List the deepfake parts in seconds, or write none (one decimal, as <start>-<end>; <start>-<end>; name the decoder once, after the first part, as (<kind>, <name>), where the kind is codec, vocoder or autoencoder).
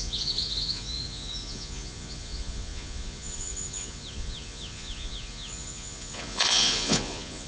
0.0-7.5 (vocoder, Vocos)